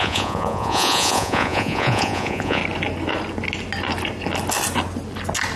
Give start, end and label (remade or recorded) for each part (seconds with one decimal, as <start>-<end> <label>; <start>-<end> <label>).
0.0-2.6 remade; 2.6-5.6 recorded